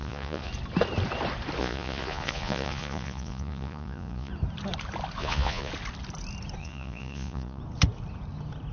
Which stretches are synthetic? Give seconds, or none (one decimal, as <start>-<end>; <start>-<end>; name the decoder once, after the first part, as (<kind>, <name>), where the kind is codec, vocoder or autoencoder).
0.0-0.5 (vocoder, Vocos); 1.6-4.3; 5.2-5.7; 6.6-7.6